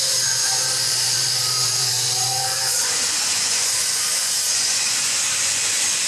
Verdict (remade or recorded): remade